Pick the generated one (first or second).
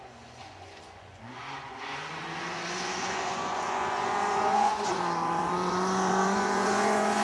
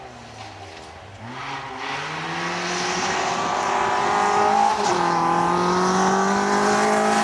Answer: first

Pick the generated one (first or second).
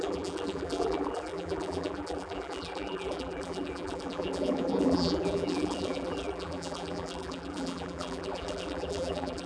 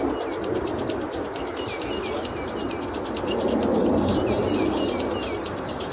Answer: first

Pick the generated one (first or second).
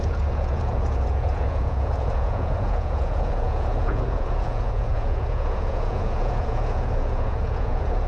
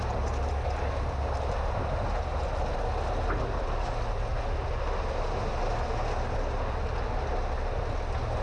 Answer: first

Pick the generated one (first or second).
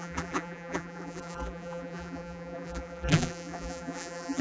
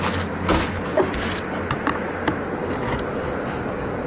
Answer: first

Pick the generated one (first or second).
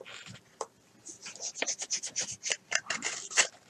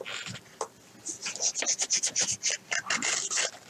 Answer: first